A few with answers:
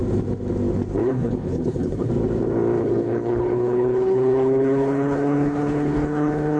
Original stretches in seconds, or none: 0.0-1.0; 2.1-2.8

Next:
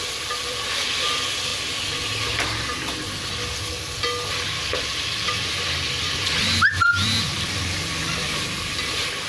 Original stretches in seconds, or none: 1.5-4.3

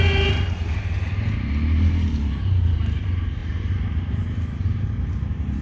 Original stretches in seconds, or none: 0.0-5.6

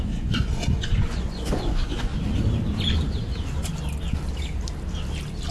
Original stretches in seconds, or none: 2.1-5.5

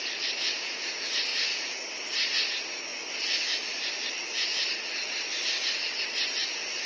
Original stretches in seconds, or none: 0.0-1.3; 1.8-6.9

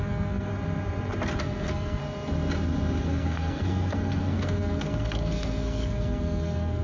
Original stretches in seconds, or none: 0.5-1.4; 2.0-3.0

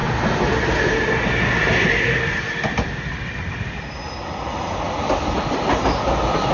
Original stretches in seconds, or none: 0.0-6.5